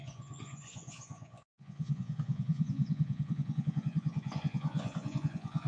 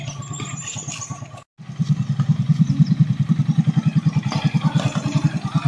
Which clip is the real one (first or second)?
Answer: second